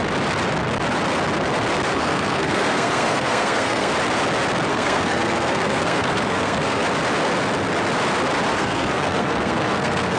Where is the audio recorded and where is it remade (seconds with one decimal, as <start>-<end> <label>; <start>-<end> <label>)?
0.0-1.9 recorded; 1.9-3.9 remade; 3.9-4.7 recorded; 4.7-6.8 remade; 6.8-8.5 recorded; 8.5-10.2 remade